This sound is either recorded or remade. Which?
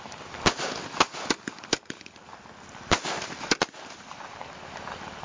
recorded